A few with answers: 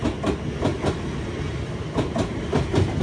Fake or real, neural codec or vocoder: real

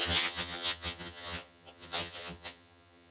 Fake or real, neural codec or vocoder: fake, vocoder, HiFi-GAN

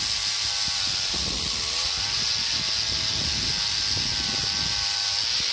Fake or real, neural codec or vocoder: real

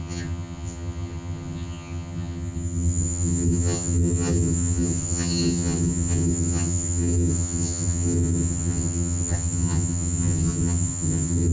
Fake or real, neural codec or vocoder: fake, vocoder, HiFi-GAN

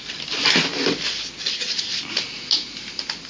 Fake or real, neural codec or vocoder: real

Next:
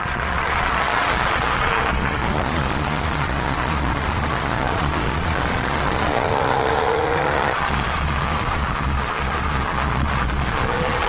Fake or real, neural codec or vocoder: fake, vocoder, Vocos